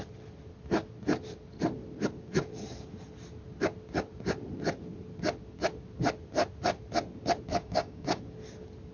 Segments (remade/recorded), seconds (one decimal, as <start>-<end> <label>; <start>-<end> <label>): 0.0-7.5 recorded; 7.5-8.2 remade; 8.2-8.9 recorded